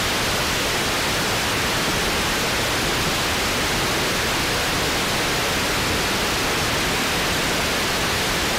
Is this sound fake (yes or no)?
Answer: no